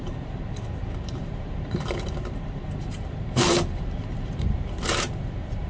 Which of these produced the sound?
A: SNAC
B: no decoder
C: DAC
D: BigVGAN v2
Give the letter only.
D